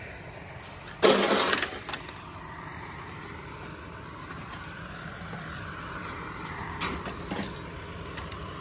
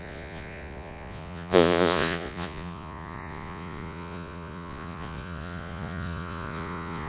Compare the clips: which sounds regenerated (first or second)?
second